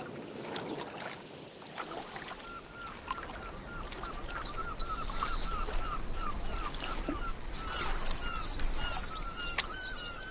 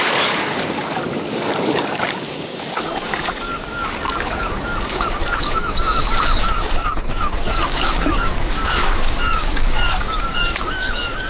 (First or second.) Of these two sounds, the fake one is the second